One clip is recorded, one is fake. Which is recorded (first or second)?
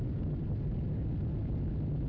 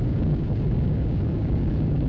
first